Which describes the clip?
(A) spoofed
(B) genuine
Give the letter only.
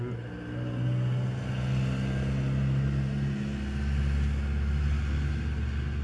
B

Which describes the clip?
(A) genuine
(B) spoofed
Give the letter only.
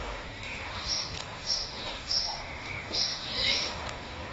B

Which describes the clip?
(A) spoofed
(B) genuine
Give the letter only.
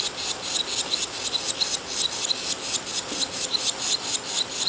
B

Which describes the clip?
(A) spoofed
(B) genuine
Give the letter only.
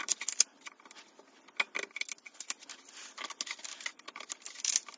B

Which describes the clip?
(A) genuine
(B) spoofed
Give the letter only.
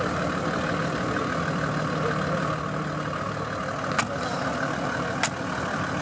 A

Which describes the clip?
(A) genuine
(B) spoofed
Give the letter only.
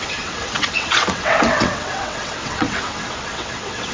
B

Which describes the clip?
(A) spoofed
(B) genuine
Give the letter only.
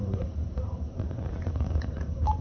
A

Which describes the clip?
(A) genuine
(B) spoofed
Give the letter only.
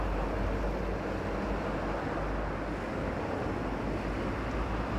A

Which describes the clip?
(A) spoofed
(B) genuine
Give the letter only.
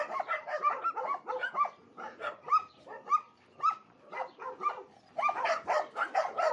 B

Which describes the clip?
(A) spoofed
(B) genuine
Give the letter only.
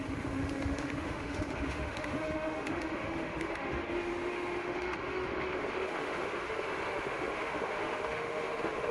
A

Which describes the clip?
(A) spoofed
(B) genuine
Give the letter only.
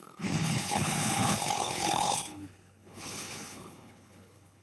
A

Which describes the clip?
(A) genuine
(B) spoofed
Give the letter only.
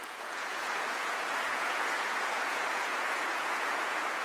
B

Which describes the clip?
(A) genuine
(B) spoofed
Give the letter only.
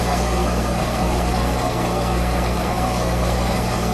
B